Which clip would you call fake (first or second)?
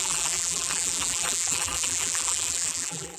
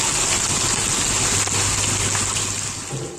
first